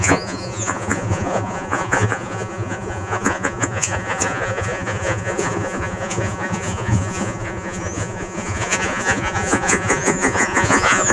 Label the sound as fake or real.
fake